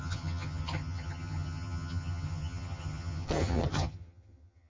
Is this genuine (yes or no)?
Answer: no